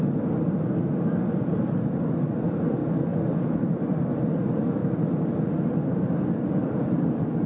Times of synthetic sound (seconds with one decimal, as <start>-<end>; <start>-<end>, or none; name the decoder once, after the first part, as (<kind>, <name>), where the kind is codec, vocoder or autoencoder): 0.0-2.8 (vocoder, BigVGAN v2); 3.4-4.8; 6.4-7.5